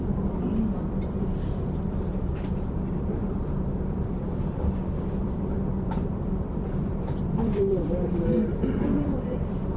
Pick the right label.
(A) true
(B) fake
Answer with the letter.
B